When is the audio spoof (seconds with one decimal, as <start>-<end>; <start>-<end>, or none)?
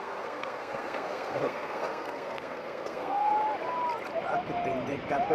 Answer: 0.0-3.3